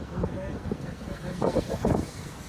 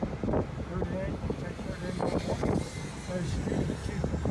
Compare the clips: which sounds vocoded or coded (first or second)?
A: first